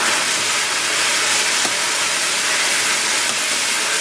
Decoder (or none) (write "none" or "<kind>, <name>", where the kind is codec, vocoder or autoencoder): none